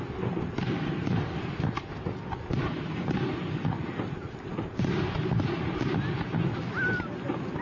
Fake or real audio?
real